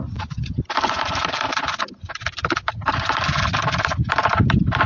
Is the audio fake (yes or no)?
no